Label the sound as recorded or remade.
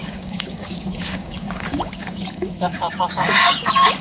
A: remade